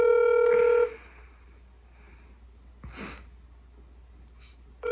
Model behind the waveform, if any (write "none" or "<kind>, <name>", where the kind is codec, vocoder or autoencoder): none